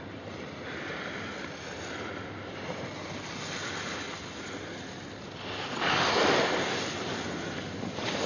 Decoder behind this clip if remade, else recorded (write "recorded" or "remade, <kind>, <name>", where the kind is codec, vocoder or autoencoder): recorded